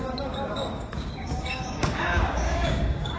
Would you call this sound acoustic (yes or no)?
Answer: no